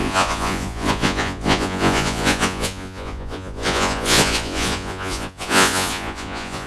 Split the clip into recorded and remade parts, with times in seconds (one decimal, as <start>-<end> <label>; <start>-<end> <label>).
0.0-6.7 remade